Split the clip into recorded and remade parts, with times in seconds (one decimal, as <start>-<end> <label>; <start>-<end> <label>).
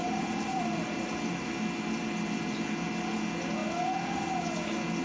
0.0-1.5 remade; 1.5-5.0 recorded